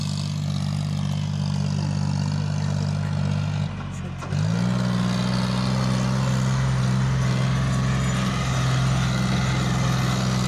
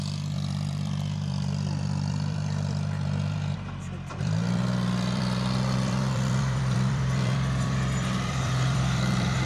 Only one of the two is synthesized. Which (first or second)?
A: second